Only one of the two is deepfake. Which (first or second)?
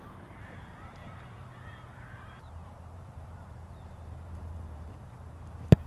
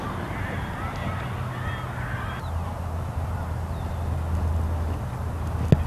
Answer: first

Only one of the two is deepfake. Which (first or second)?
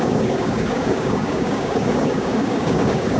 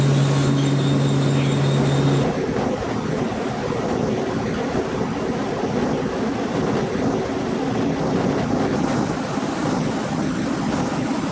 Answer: first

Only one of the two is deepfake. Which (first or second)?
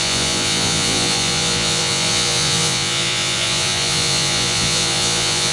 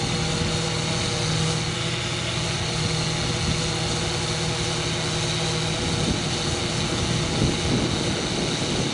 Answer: first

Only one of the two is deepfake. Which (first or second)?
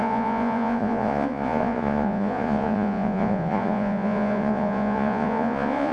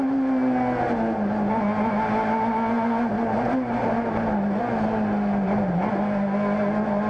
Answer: first